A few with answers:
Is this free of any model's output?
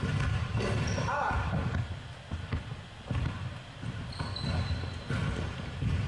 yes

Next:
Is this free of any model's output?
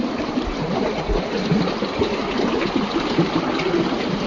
yes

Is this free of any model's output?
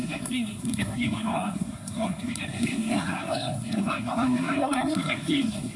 no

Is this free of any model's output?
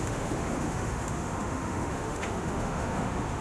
no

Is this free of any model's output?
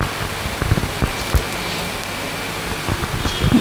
yes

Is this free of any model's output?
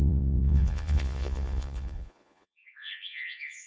no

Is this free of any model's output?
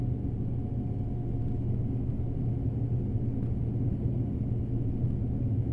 yes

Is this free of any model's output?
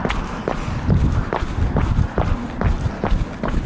yes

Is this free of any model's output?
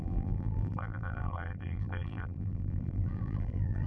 no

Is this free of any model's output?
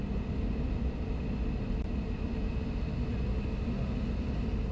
yes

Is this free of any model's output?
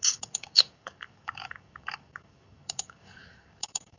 no